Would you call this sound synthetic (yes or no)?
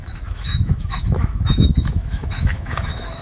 yes